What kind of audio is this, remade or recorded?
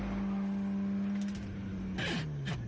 recorded